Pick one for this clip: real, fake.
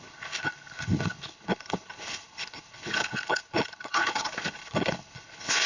fake